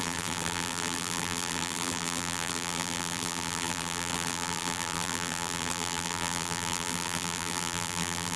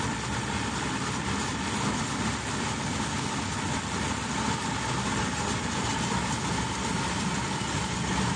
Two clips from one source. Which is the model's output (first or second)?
first